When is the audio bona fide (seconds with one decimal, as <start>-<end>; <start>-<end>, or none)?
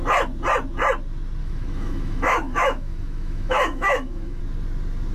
0.0-1.4; 4.4-5.1